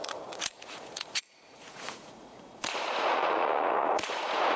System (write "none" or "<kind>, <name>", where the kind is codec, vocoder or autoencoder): vocoder, Vocos